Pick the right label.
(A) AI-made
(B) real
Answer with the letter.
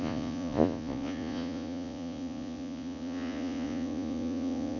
A